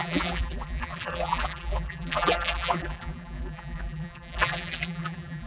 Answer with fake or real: fake